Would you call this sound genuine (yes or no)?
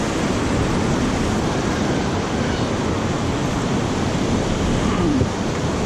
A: no